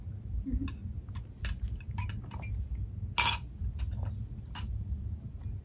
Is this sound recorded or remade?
recorded